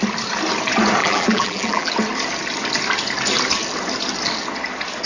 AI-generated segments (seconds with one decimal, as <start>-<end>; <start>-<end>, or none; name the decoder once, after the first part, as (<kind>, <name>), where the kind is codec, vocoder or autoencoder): 1.0-1.9 (vocoder, BigVGAN v2)